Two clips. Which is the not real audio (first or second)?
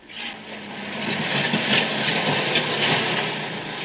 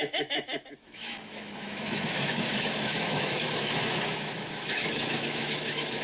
second